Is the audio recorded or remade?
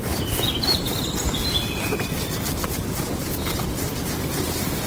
recorded